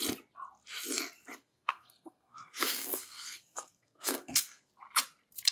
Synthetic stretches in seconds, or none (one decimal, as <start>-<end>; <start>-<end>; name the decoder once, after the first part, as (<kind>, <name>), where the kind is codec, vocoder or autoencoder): 1.4-4.7 (codec, SNAC)

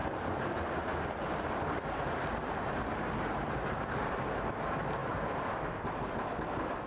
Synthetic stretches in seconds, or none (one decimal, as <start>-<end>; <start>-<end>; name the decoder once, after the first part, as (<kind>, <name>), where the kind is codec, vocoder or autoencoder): 0.0-4.1 (vocoder, BigVGAN v2)

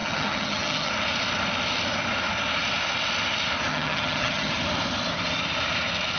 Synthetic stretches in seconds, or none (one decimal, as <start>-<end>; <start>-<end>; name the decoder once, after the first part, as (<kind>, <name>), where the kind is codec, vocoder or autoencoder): 0.0-0.9 (vocoder, HiFi-GAN); 3.7-4.5

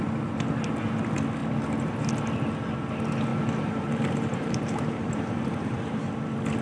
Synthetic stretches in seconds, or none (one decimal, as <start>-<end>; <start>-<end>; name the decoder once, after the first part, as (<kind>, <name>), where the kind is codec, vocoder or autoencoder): 3.3-6.0 (vocoder, BigVGAN v2)

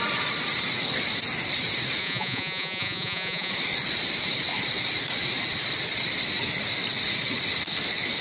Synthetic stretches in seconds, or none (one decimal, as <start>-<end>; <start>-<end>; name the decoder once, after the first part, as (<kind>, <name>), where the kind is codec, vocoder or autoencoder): 2.0-3.5 (vocoder, Vocos)